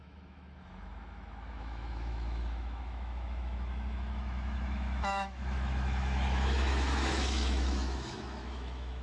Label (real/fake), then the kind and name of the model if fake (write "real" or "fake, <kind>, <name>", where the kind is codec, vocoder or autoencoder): fake, autoencoder, DAC-VAE